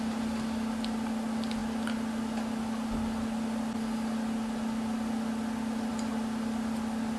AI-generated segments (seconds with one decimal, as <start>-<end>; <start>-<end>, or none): none